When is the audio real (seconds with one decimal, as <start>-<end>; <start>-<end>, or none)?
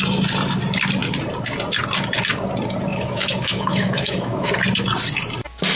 0.0-2.9; 4.5-5.8